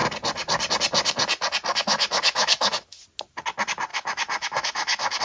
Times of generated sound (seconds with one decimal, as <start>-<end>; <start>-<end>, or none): 1.7-3.0; 3.9-5.2